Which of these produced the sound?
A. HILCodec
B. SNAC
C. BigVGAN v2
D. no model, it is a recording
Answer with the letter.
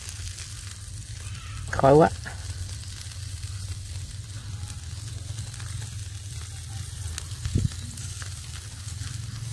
D